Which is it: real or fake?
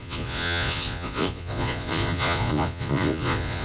fake